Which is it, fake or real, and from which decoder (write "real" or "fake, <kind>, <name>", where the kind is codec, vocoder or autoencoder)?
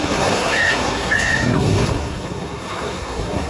fake, codec, SNAC